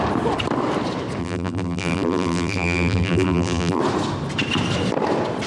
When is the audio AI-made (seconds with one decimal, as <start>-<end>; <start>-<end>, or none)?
1.2-3.8